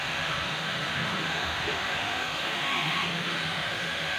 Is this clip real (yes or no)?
no